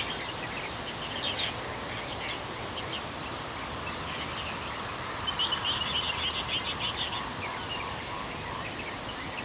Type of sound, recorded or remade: recorded